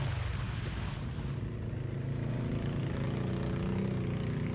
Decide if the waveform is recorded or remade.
recorded